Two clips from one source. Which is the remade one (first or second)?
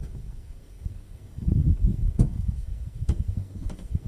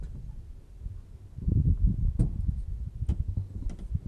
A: first